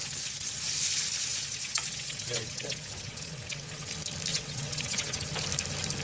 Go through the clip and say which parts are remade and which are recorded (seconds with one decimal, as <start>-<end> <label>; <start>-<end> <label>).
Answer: 0.0-0.6 remade; 0.6-1.3 recorded; 1.3-3.9 remade; 3.9-4.3 recorded; 4.3-5.3 remade; 5.3-6.0 recorded